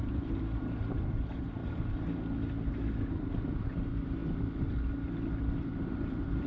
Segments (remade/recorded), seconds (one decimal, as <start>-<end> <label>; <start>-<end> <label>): 0.0-1.6 remade; 1.6-3.1 recorded; 3.1-4.2 remade; 4.2-5.6 recorded; 5.6-6.5 remade